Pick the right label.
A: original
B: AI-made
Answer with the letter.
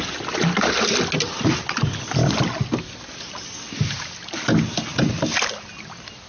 A